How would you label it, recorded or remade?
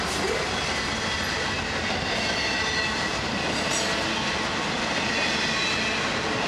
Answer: recorded